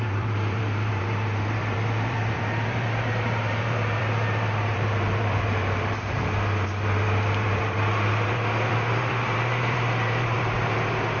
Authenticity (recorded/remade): remade